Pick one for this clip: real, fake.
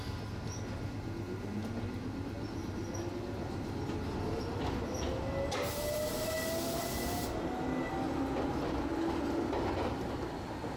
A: real